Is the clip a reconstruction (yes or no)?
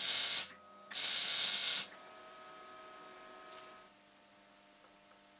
no